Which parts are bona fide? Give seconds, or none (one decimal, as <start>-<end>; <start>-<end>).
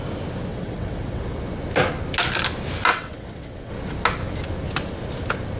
0.0-0.5; 1.2-2.9; 3.7-5.6